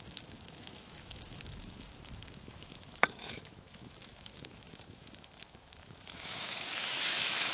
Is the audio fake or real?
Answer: fake